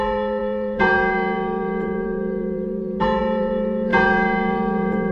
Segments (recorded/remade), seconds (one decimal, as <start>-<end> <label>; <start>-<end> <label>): 0.0-5.1 remade